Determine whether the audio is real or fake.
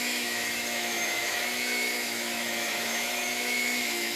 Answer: fake